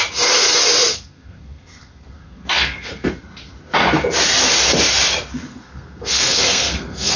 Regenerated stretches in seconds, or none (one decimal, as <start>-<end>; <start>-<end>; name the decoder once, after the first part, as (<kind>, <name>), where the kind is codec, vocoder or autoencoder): 0.9-3.1 (codec, SNAC); 5.5-7.2